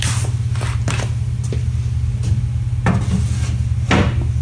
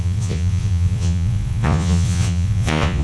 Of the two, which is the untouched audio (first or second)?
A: first